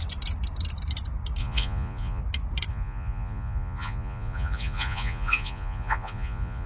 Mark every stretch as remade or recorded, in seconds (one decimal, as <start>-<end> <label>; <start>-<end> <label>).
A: 0.0-1.4 recorded; 1.4-2.2 remade; 2.2-2.7 recorded; 2.7-6.7 remade